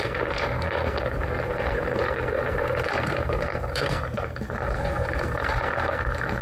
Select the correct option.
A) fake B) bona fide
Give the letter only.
A